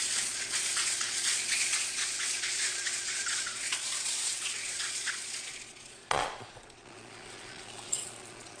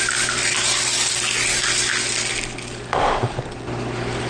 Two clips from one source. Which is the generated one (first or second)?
first